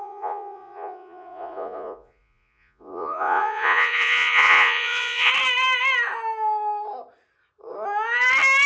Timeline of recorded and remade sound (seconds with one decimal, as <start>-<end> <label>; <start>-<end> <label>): 0.0-5.3 remade; 5.3-8.7 recorded